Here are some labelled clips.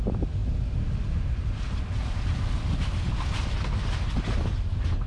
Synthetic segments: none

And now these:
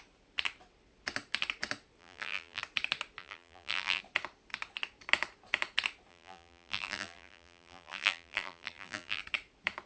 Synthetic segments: 2.0-2.6 (vocoder, BigVGAN v2); 3.2-4.0; 6.1-9.2

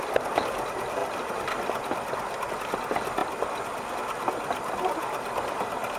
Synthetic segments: none

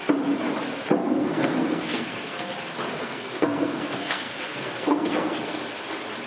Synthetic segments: 1.0-2.5 (codec, SNAC); 3.0-5.6

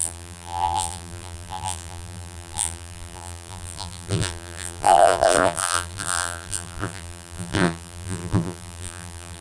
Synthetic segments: 0.0-9.4 (vocoder, BigVGAN v2)

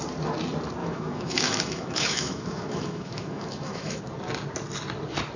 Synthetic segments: 0.8-4.0 (autoencoder, DAC-VAE)

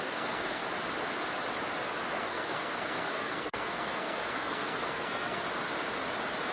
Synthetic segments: 0.0-0.6 (codec, SNAC); 2.1-5.4

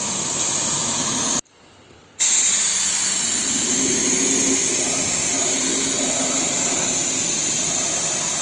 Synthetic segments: none